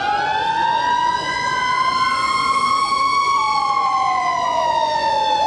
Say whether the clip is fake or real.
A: fake